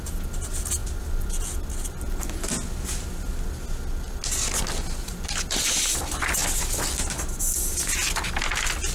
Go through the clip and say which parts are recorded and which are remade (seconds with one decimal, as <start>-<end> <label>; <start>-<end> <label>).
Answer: 0.0-8.9 recorded